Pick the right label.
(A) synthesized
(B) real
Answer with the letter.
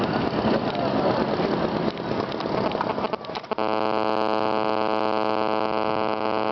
B